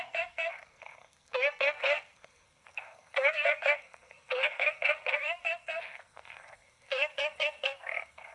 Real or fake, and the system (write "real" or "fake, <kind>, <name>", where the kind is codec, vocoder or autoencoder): fake, codec, SNAC